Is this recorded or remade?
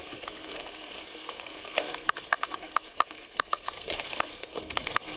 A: remade